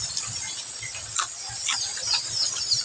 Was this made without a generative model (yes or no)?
yes